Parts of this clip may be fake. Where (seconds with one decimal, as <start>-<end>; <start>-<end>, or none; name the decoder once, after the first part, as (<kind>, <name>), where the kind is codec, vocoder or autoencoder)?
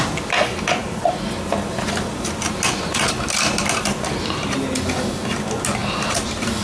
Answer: 5.8-6.6 (vocoder, BigVGAN v2)